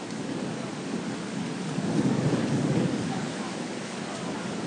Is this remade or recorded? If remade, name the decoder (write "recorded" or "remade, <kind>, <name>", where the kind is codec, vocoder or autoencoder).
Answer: remade, codec, DAC